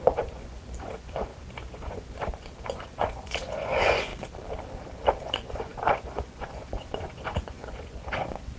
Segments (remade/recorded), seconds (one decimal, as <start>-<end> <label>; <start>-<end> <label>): 0.0-4.1 remade; 4.1-5.2 recorded; 5.2-8.6 remade